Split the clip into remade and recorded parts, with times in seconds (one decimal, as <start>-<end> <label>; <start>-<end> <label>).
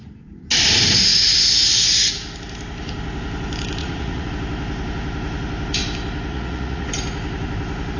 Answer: 0.0-3.8 recorded; 3.8-4.3 remade; 4.3-6.3 recorded; 6.3-6.9 remade; 6.9-8.0 recorded